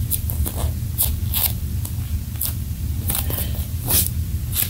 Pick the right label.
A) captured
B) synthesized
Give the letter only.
A